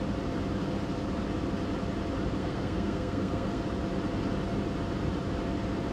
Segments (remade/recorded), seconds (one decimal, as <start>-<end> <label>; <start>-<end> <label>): 0.0-2.4 recorded; 2.4-3.6 remade; 3.6-5.9 recorded

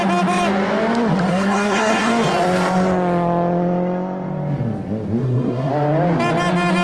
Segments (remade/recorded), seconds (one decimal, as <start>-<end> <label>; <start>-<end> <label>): 0.0-1.3 recorded; 1.3-2.1 remade; 2.1-5.2 recorded; 5.2-5.7 remade; 5.7-6.8 recorded

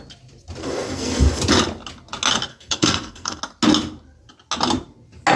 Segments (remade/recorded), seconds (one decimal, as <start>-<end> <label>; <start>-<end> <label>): 0.0-0.6 recorded; 0.6-1.4 remade; 1.4-2.5 recorded; 2.5-3.4 remade; 3.4-5.4 recorded

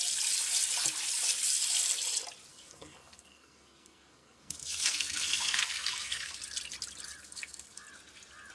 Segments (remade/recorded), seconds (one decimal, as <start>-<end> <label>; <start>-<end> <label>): 0.0-2.5 recorded; 2.5-6.4 remade; 6.4-7.2 recorded; 7.2-7.8 remade; 7.8-8.5 recorded

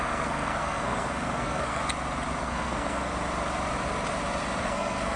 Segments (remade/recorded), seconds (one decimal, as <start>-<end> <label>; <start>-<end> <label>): 0.0-1.8 remade; 1.8-2.4 recorded; 2.4-3.1 remade; 3.1-4.6 recorded; 4.6-5.2 remade